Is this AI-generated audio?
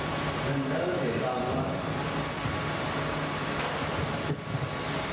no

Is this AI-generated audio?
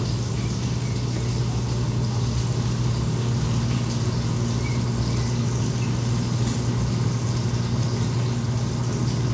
no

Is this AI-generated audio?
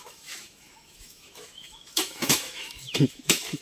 yes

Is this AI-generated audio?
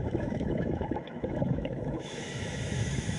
yes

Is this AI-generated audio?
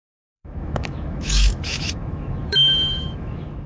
yes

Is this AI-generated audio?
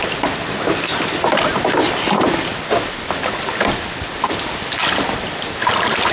no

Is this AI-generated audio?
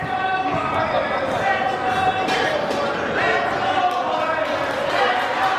no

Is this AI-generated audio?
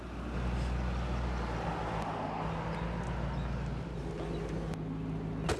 no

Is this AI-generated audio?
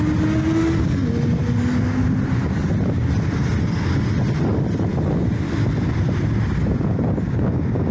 no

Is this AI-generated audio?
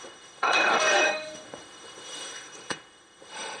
yes